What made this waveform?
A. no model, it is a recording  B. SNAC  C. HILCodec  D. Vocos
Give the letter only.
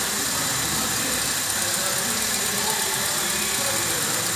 A